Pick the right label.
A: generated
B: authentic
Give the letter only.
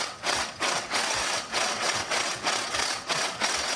A